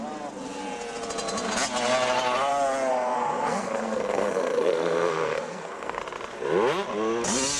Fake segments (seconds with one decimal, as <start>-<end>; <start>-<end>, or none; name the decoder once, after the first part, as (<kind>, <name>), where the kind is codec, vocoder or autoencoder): 2.9-6.0 (codec, SNAC)